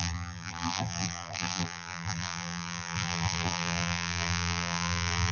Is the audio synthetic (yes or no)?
yes